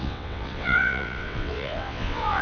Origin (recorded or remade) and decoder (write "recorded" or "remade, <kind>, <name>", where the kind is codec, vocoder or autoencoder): remade, vocoder, WaveNeXt